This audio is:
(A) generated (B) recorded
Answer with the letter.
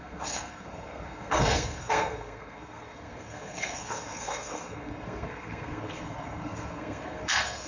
A